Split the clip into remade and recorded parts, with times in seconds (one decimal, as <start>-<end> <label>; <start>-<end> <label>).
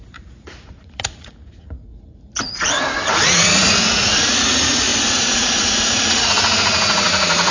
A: 0.0-1.9 remade; 1.9-2.4 recorded; 2.4-7.5 remade